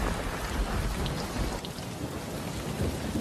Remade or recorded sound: recorded